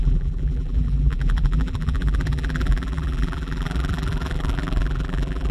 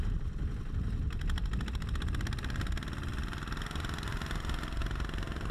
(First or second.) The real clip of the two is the second